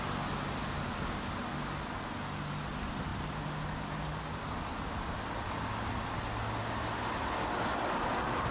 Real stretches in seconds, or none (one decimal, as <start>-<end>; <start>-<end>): 0.0-8.5